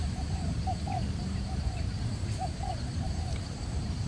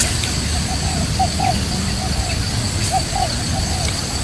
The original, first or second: second